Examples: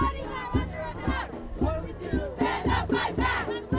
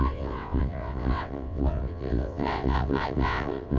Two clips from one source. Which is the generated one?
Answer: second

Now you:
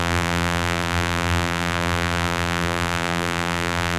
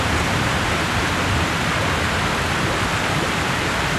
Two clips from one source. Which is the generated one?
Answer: first